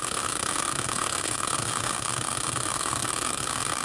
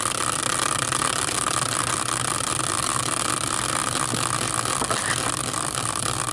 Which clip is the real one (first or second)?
second